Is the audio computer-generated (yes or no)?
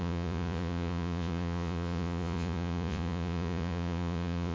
yes